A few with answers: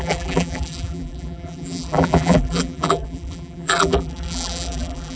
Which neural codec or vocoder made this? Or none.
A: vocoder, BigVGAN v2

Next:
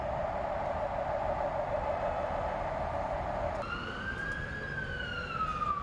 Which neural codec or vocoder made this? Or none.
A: none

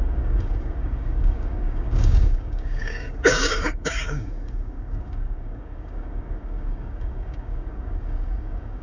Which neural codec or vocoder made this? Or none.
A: codec, DAC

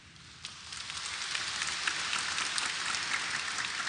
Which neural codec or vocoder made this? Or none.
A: none